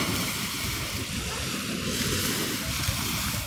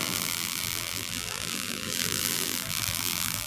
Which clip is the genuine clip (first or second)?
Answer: first